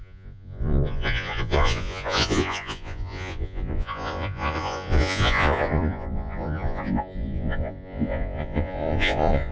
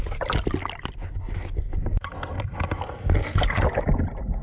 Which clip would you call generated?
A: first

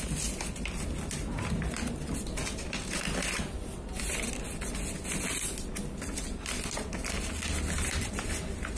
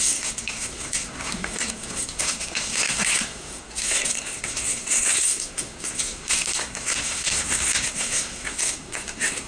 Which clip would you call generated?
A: second